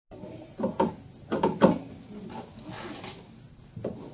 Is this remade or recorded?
recorded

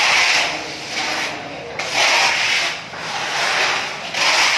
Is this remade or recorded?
recorded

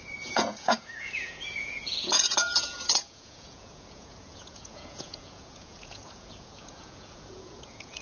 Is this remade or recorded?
remade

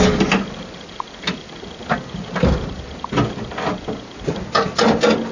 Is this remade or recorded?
recorded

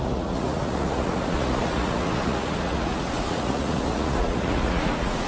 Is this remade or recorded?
remade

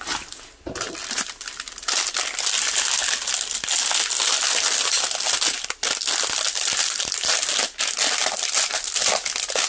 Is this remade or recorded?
recorded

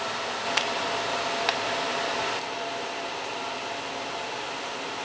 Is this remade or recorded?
recorded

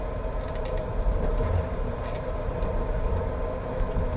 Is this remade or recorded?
recorded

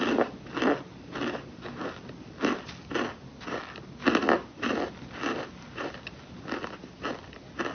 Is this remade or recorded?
recorded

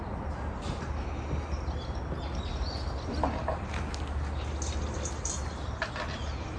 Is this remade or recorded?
recorded